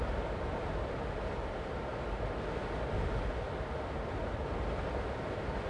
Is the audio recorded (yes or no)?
yes